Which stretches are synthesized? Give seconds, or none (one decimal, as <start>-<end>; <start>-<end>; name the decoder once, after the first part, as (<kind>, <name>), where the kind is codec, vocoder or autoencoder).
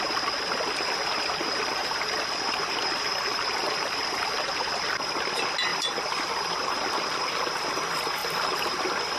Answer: 1.8-4.2 (vocoder, BigVGAN v2); 5.7-7.3; 8.2-9.2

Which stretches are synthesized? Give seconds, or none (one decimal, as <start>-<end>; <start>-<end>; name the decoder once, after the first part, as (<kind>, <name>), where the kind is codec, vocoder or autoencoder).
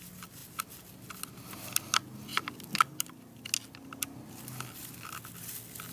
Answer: none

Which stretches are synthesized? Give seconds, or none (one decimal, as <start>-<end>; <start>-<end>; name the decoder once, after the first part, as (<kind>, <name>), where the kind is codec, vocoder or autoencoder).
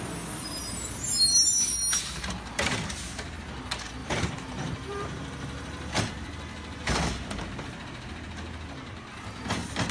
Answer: 4.0-6.0 (vocoder, BigVGAN v2)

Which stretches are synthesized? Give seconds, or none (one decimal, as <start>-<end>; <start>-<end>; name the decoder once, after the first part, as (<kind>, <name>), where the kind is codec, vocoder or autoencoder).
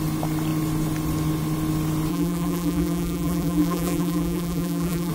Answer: 2.1-5.1 (vocoder, BigVGAN v2)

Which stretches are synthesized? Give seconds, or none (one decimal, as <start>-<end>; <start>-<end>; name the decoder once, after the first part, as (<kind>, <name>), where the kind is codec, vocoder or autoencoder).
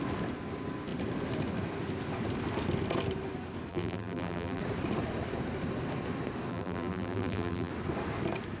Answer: 3.7-4.6 (vocoder, BigVGAN v2); 6.5-7.7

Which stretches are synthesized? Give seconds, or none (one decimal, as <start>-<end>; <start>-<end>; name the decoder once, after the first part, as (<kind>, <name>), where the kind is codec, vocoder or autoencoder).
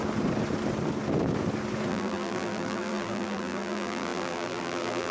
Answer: 1.9-5.1 (vocoder, BigVGAN v2)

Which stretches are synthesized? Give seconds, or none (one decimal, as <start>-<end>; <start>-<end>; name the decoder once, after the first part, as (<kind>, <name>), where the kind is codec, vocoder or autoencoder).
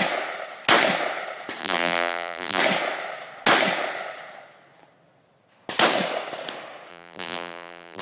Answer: 1.6-2.6 (vocoder, BigVGAN v2); 6.9-8.0